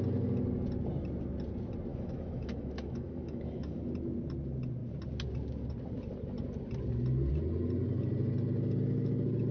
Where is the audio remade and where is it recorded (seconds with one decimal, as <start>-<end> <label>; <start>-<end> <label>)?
0.0-1.9 recorded; 1.9-3.8 remade; 3.8-9.5 recorded